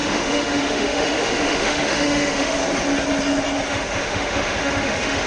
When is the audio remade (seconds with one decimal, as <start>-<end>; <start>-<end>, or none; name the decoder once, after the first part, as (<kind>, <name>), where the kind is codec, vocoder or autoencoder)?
0.0-2.6 (autoencoder, DAC-VAE); 3.7-5.3